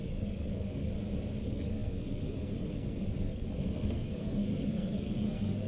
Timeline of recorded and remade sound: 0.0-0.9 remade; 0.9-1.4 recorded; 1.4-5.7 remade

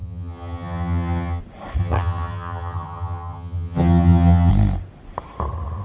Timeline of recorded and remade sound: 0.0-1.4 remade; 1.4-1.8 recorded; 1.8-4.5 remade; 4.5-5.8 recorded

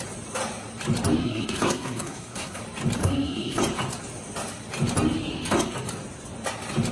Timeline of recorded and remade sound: 0.0-1.2 recorded; 1.2-2.6 remade; 2.6-3.0 recorded; 3.0-3.6 remade; 3.6-6.9 recorded

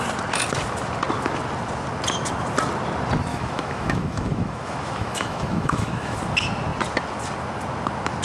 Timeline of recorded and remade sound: 0.0-3.3 recorded; 3.3-6.2 remade; 6.2-8.2 recorded

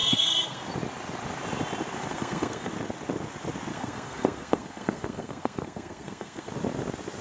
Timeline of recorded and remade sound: 0.0-0.6 remade; 0.6-2.1 recorded; 2.1-2.7 remade; 2.7-3.7 recorded; 3.7-6.5 remade; 6.5-7.2 recorded

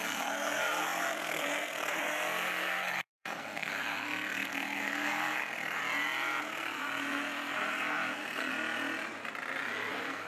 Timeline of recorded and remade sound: 0.0-5.8 remade; 5.8-6.4 recorded; 6.4-8.5 remade; 8.5-9.9 recorded; 9.9-10.3 remade

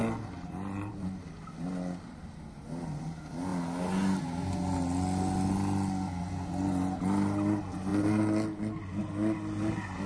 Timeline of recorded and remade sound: 0.0-10.1 recorded